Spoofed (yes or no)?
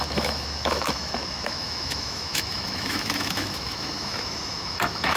yes